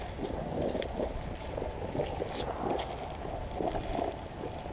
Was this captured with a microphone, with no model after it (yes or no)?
yes